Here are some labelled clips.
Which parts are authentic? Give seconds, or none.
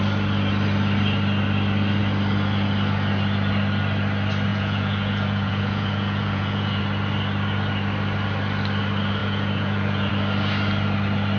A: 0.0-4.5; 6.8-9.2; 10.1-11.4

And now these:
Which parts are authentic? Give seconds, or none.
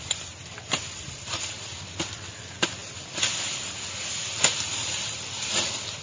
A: 0.0-6.0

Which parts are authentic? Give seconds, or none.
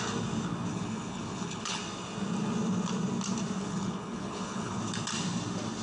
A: 0.0-0.7; 1.8-3.6; 4.8-5.8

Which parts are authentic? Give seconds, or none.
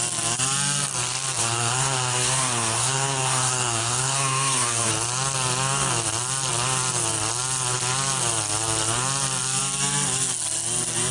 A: 0.0-1.4; 4.9-11.1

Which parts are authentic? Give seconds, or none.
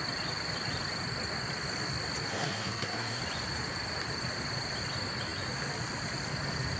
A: 0.0-2.3; 3.2-6.8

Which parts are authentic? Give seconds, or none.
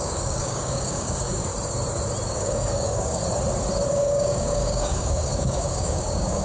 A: 1.5-2.3; 3.2-3.9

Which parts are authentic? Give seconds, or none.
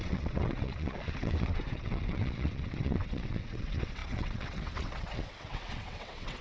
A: none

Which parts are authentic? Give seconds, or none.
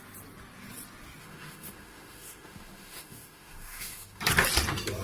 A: 0.0-1.2; 4.2-5.0